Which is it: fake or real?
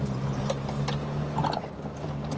real